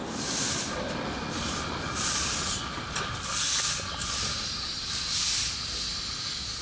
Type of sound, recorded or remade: recorded